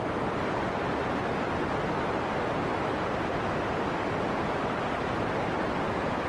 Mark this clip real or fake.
real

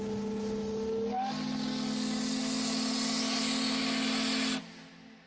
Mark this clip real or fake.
real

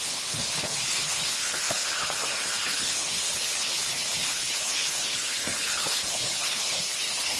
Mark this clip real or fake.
fake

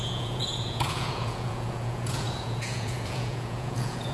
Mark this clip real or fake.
fake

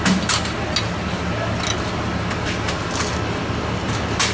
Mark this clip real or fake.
real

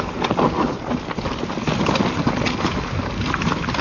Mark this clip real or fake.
real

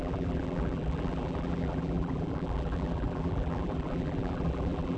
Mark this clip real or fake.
fake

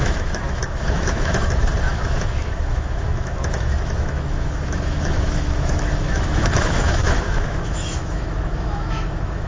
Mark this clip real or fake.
fake